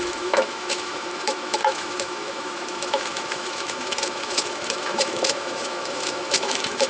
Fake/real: fake